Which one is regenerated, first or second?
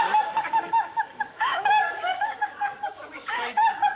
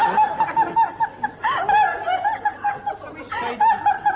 first